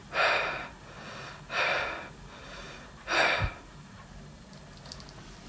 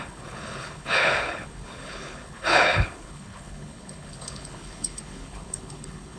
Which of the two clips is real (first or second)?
first